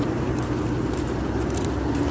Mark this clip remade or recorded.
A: recorded